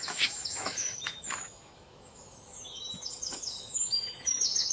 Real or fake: fake